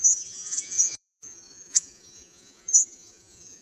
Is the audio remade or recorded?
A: remade